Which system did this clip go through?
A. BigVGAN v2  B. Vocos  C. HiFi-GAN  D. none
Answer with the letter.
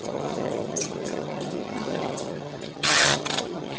C